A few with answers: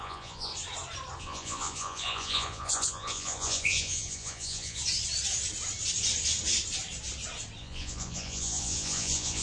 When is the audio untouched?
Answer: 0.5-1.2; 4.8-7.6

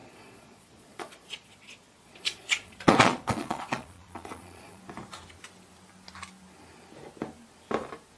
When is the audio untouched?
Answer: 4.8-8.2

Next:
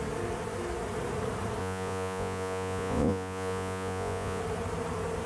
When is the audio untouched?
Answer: 0.0-1.6; 4.4-5.3

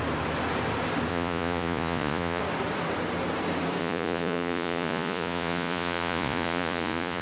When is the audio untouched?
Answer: 0.0-1.1; 2.4-3.8

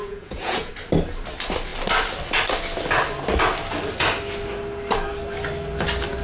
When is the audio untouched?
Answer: 0.7-6.2